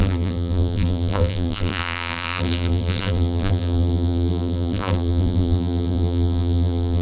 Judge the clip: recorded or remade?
remade